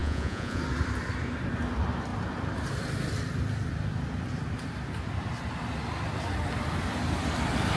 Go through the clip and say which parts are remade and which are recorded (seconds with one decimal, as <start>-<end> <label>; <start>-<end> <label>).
0.0-0.6 remade; 0.6-7.8 recorded